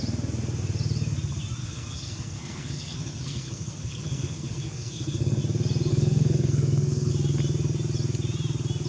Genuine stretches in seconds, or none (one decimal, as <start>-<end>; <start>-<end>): 0.0-1.6; 5.4-5.9; 7.1-8.9